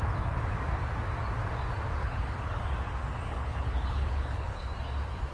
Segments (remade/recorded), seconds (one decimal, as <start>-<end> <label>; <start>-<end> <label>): 0.0-2.0 recorded; 2.0-2.6 remade; 2.6-3.3 recorded; 3.3-4.7 remade; 4.7-5.3 recorded